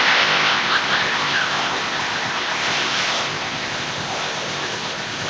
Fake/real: fake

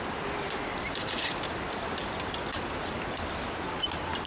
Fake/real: real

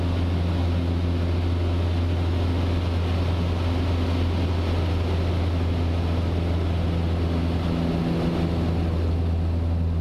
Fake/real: real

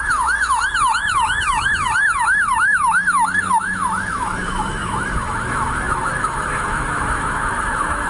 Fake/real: fake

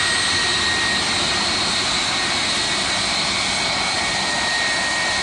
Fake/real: real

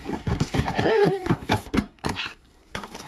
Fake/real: fake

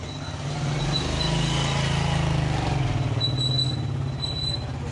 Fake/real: real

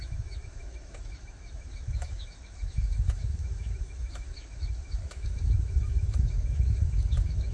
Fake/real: fake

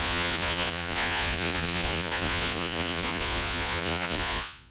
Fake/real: fake